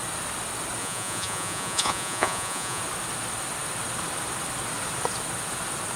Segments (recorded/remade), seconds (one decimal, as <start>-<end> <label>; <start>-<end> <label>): 0.0-0.8 recorded; 0.8-2.8 remade; 2.8-6.0 recorded